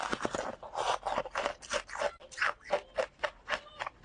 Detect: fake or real real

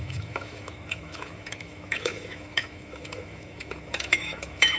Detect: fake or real fake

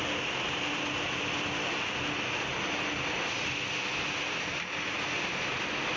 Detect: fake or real real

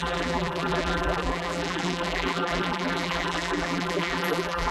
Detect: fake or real fake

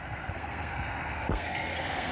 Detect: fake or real fake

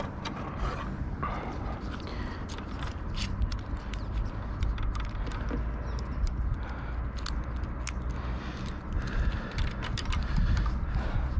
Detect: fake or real real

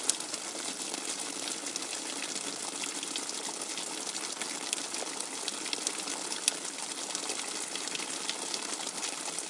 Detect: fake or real real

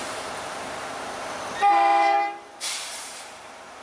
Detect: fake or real fake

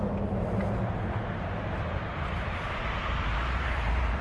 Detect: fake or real fake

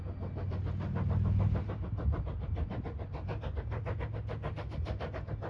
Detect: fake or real real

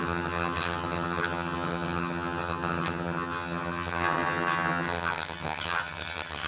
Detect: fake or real fake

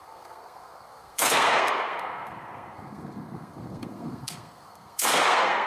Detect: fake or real fake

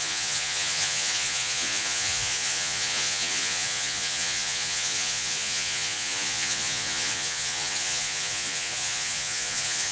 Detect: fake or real fake